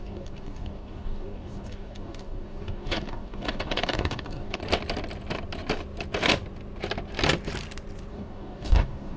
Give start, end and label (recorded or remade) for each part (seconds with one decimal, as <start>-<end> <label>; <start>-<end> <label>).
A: 0.0-4.6 remade; 4.6-8.1 recorded; 8.1-9.2 remade